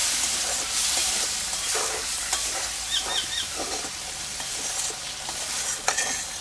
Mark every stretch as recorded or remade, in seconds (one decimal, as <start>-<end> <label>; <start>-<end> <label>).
0.0-3.8 remade; 3.8-6.4 recorded